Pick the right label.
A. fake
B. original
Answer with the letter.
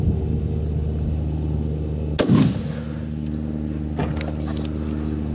B